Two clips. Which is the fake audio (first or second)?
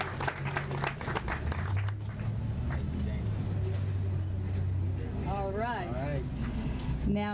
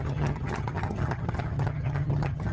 second